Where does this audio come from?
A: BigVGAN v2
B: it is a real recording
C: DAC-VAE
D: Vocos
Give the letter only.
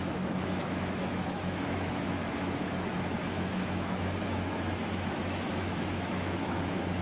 C